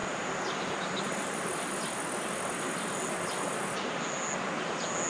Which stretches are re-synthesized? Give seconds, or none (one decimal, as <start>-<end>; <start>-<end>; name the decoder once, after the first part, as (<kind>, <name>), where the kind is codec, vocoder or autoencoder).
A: 0.0-1.7 (vocoder, BigVGAN v2)